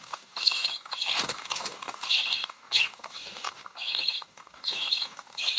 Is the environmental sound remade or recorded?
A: remade